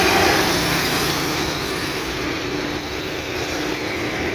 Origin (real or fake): fake